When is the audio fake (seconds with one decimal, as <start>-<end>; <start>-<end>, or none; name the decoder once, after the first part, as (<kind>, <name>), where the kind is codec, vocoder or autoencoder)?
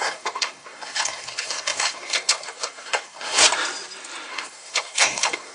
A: 0.0-3.4 (codec, SNAC); 4.3-5.5